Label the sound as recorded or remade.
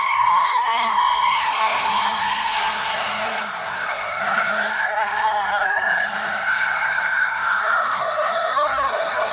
remade